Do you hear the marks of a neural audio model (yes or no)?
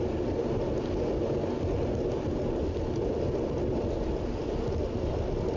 no